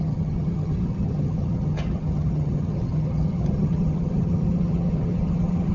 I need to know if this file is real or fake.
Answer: fake